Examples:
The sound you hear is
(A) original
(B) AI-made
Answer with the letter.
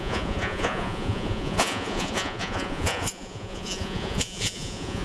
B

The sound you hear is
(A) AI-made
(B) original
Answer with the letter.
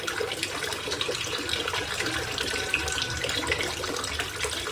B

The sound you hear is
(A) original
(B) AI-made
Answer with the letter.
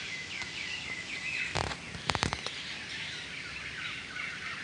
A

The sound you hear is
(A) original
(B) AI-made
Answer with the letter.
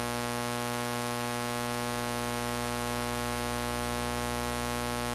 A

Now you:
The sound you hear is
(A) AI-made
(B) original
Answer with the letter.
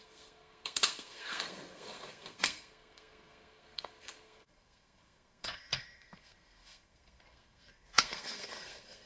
A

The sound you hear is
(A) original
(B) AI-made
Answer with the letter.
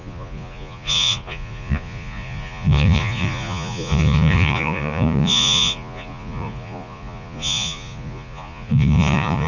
B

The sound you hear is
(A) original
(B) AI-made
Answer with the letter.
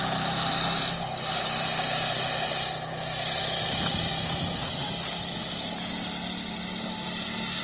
A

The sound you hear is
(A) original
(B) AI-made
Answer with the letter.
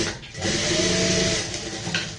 A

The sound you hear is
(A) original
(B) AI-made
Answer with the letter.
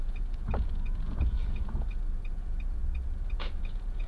B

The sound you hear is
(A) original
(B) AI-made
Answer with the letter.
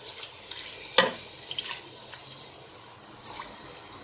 A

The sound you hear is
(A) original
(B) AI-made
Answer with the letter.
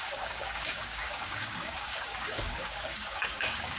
B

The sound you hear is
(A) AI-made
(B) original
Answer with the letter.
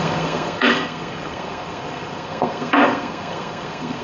A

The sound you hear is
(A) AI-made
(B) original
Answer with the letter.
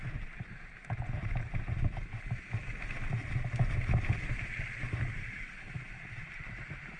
B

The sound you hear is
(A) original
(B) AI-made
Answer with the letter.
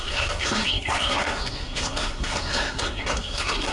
B